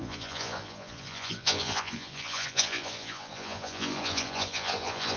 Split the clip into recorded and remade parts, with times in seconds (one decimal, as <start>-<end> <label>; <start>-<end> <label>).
0.0-5.2 remade